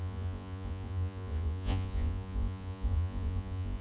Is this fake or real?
fake